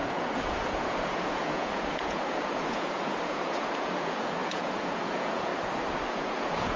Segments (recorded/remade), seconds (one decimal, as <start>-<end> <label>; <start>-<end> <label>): 0.0-5.5 remade; 5.5-6.1 recorded; 6.1-6.8 remade